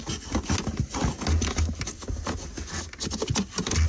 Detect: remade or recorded recorded